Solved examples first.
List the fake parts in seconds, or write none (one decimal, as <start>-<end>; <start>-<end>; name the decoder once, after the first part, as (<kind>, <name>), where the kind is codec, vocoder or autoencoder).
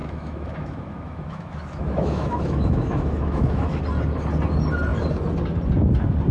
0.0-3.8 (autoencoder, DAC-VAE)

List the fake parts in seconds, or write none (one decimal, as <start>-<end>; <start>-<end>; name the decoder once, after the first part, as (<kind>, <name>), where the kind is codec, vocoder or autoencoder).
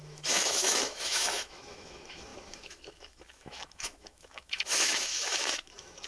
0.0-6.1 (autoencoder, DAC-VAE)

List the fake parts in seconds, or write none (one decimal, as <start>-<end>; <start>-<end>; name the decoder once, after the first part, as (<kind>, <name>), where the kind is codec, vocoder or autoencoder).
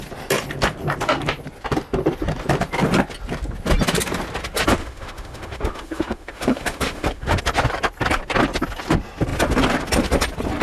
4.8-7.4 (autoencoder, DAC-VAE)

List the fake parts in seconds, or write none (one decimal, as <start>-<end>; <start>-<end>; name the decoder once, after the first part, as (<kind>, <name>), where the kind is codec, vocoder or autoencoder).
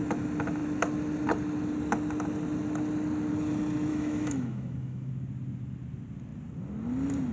3.9-5.1 (autoencoder, DAC-VAE)